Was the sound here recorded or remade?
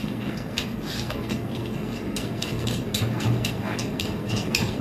remade